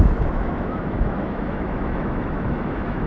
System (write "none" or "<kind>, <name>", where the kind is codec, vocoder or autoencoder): autoencoder, DAC-VAE